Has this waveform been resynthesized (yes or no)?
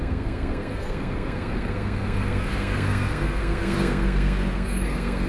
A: yes